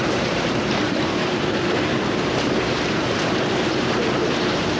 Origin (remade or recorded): remade